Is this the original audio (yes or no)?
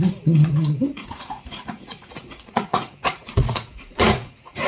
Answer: no